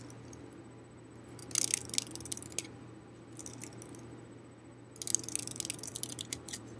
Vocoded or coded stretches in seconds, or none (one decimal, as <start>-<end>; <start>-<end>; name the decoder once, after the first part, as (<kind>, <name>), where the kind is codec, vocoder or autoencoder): 5.9-6.8 (vocoder, BigVGAN v2)